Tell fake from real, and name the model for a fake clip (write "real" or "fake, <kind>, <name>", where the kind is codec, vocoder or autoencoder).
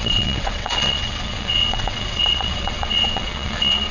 fake, vocoder, WaveNeXt